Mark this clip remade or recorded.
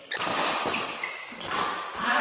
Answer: recorded